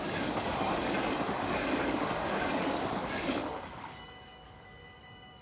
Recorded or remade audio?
remade